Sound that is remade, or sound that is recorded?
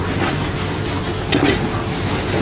recorded